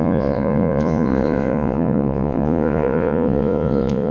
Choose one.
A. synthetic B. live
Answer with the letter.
A